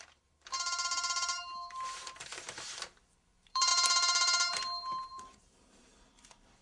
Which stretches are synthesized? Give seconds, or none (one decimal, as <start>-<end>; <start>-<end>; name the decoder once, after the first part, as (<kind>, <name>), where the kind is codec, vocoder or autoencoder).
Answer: 0.0-6.6 (vocoder, BigVGAN v2)